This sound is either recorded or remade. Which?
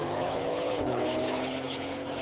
remade